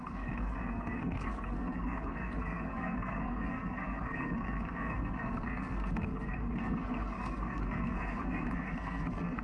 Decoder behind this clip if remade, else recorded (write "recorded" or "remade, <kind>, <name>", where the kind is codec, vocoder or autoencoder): remade, codec, SNAC